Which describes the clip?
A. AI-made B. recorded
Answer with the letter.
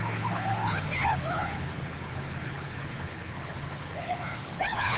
A